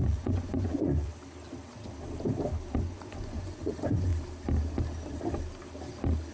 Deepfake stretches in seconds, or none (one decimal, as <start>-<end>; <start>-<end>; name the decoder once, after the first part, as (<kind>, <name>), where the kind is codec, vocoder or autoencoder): 0.0-1.1 (vocoder, Vocos); 2.7-4.1